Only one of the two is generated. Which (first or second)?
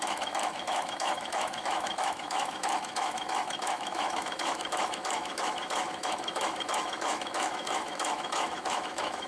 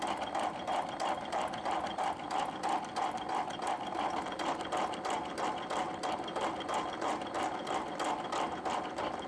first